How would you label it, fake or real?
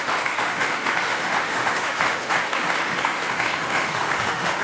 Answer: fake